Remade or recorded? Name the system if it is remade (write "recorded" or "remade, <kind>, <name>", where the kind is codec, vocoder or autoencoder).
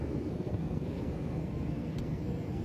remade, codec, SNAC